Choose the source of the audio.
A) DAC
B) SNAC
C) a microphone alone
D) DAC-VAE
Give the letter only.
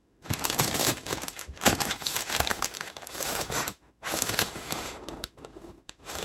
D